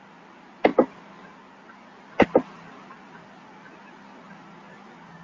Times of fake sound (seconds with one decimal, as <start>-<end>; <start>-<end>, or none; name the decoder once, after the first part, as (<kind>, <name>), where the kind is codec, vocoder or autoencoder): none